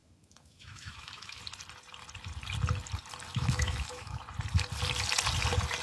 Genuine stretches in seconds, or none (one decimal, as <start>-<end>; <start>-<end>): 1.4-3.3; 4.2-5.8